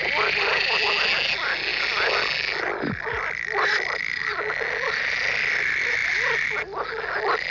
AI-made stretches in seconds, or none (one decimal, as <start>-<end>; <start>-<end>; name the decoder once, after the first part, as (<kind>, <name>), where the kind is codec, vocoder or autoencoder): none